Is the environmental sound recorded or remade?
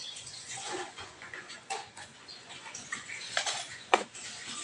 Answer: remade